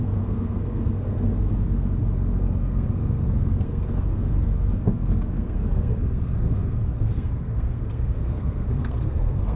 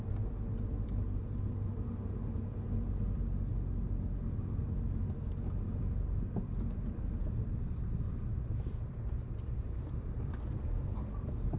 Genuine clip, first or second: second